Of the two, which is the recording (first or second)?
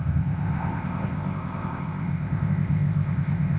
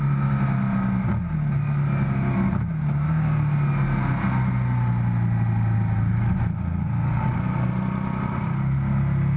second